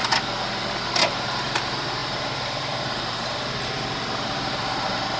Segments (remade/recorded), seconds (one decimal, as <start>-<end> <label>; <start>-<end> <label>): 0.0-1.0 recorded; 1.0-5.2 remade